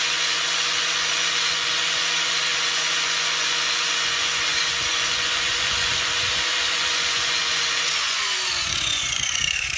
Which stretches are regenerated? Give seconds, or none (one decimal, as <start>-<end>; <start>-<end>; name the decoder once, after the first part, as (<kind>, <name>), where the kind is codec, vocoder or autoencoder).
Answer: 0.0-9.8 (vocoder, Vocos)